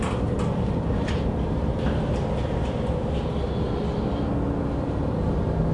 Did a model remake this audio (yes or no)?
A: no